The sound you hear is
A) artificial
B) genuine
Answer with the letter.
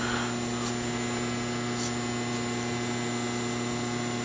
B